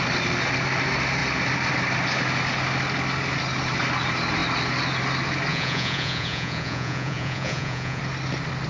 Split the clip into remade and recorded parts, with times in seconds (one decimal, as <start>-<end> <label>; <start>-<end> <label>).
0.0-5.5 recorded; 5.5-8.0 remade; 8.0-8.7 recorded